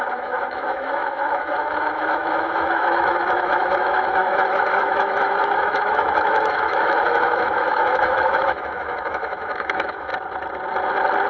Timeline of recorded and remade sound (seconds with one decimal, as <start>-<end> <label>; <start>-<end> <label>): 0.0-10.1 remade; 10.1-11.3 recorded